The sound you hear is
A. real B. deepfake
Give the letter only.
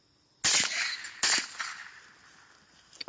A